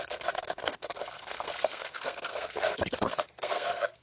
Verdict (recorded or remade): remade